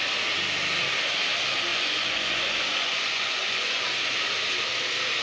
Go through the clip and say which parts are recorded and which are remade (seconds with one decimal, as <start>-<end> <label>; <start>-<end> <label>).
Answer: 0.0-1.7 recorded; 1.7-3.8 remade; 3.8-5.2 recorded